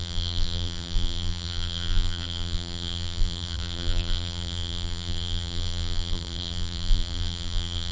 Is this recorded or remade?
remade